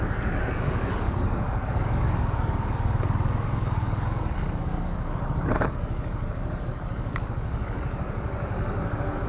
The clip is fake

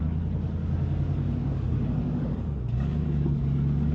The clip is fake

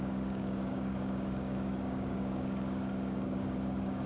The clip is fake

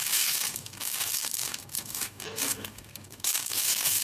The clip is fake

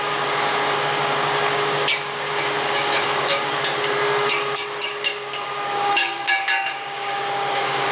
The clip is fake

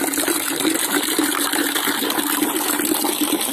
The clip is real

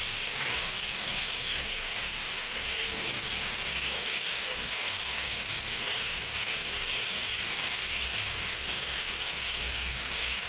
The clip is fake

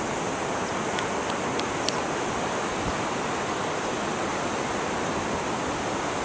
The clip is real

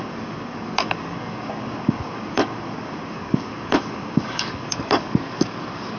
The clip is fake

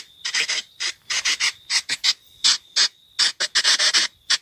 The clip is real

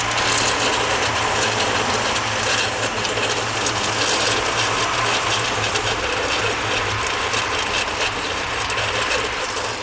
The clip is real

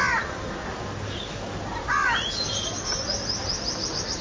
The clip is real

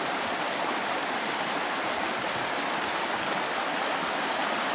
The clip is real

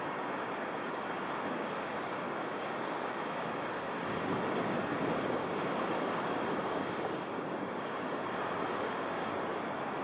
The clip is fake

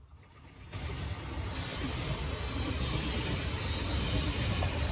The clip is real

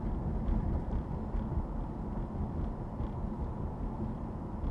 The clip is real